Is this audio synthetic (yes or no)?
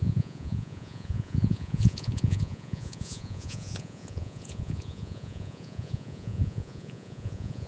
yes